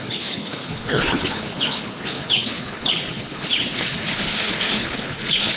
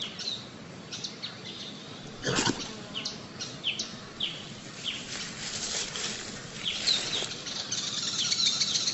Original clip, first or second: second